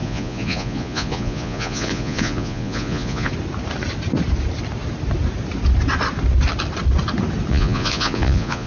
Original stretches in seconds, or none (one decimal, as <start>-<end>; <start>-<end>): 3.3-7.5